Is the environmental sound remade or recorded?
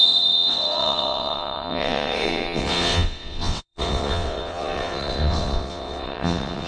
remade